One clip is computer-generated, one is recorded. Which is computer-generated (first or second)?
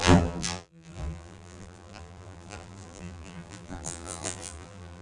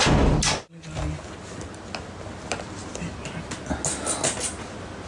first